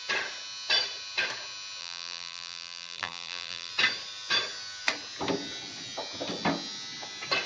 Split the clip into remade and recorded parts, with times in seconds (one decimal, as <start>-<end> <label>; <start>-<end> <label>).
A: 0.0-1.8 recorded; 1.8-3.7 remade; 3.7-7.5 recorded